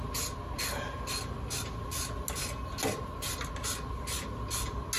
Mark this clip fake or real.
real